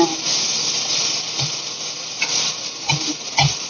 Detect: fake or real real